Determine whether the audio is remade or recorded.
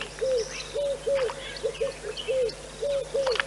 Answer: recorded